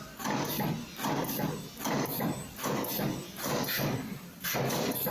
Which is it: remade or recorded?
remade